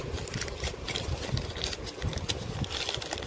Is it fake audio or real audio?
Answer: real